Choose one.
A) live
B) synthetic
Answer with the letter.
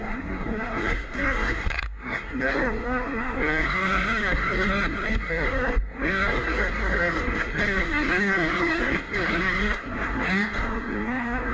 B